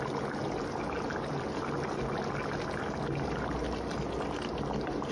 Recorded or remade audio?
recorded